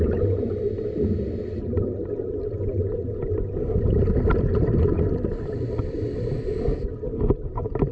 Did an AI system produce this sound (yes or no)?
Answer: no